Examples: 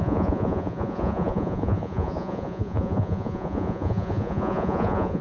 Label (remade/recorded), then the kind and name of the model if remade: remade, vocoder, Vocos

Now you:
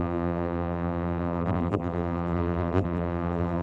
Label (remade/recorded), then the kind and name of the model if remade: remade, vocoder, BigVGAN v2